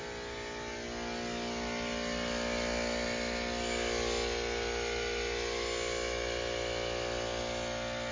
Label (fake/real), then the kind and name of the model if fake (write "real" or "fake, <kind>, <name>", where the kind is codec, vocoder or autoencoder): real